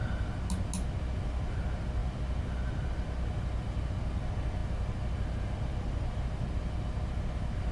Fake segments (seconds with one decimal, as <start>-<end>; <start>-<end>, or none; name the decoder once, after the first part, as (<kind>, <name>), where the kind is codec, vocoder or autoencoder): none